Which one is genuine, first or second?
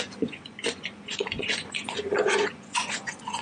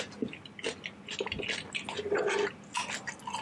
second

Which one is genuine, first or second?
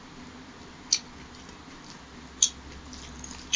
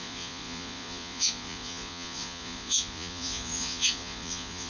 first